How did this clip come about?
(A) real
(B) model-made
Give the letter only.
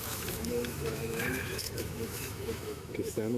B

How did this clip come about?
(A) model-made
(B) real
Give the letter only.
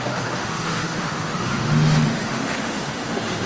A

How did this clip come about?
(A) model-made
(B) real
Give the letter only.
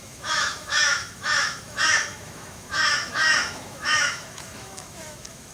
A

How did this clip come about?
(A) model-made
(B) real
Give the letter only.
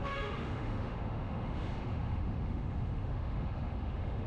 A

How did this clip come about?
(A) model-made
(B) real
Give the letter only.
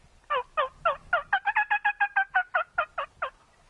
B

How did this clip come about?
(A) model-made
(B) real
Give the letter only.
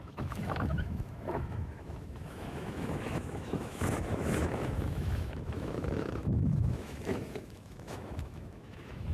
A